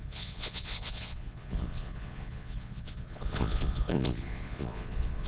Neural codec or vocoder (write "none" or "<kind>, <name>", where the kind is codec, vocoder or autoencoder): vocoder, Vocos